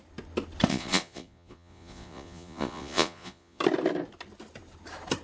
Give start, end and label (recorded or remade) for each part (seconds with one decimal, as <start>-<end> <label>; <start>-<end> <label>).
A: 0.0-0.7 recorded; 0.7-3.6 remade; 3.6-5.2 recorded